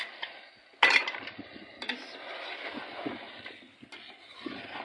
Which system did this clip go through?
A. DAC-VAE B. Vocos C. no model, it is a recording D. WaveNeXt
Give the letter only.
C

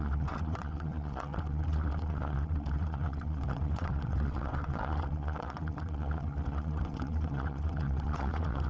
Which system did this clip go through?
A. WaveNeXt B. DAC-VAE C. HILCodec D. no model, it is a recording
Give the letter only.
A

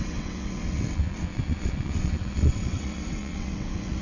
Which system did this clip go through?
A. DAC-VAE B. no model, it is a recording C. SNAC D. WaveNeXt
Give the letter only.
D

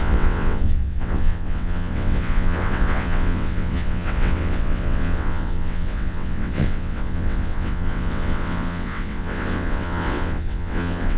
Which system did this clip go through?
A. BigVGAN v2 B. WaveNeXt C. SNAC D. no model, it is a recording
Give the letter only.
B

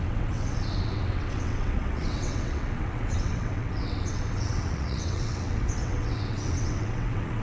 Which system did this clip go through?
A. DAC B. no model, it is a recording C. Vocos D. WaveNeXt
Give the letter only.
D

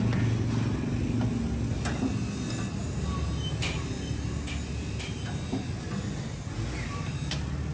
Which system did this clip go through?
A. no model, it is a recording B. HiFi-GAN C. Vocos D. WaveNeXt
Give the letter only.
A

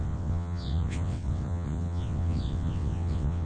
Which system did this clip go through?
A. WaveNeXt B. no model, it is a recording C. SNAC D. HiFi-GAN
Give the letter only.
A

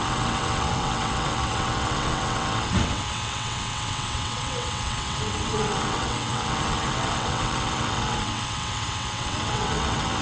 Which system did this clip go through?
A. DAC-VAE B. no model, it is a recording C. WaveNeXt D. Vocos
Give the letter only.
C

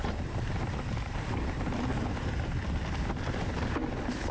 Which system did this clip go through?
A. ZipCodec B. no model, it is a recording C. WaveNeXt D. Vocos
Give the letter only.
B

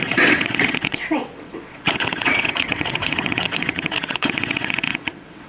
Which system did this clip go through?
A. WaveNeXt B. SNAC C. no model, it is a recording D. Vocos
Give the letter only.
A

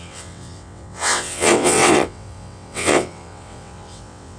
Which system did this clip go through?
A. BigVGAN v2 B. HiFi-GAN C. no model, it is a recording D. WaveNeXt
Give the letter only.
D